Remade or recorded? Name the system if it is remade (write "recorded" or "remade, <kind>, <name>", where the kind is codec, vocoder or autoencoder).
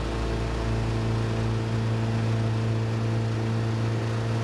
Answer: recorded